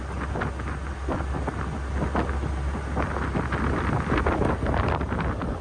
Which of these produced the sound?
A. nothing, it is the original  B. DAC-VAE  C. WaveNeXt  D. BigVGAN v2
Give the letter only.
A